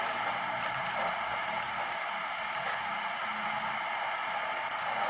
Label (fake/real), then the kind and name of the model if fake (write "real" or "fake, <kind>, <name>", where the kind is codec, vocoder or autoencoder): real